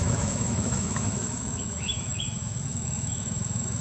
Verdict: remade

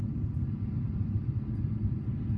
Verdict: recorded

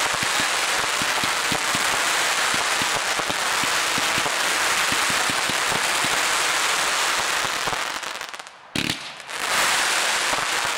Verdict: recorded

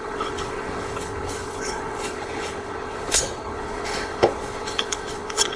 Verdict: remade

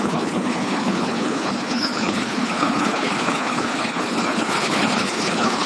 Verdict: remade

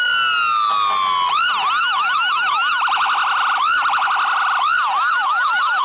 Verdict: recorded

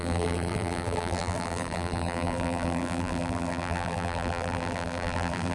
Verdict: remade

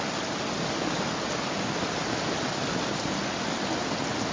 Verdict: recorded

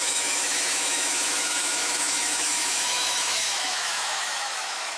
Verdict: remade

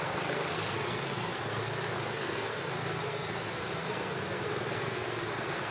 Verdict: remade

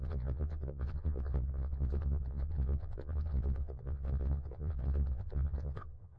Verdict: remade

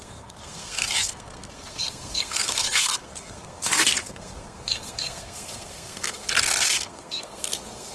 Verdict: remade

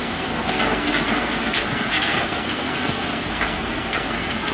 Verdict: remade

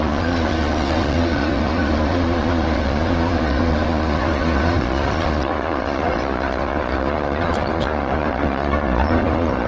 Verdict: remade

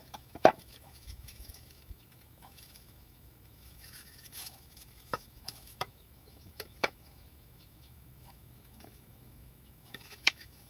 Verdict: remade